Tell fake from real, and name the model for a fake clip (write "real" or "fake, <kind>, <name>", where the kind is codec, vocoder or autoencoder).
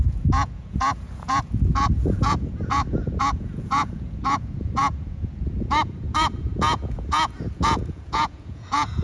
fake, vocoder, Vocos